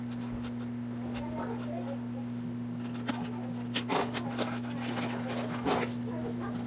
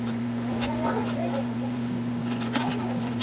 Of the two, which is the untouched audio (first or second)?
first